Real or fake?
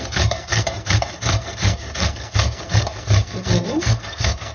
fake